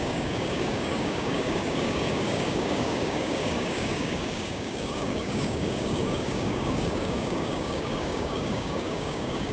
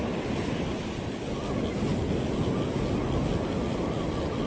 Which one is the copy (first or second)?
first